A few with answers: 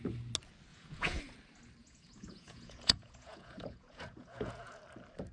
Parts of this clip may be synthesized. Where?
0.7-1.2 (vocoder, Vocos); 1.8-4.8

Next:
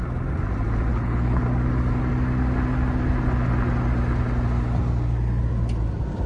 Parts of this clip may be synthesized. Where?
0.9-1.4 (codec, HILCodec)

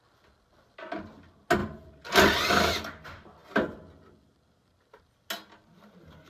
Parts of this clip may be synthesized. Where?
none

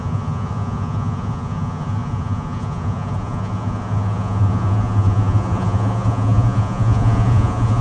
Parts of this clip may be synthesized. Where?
0.0-7.8 (vocoder, Vocos)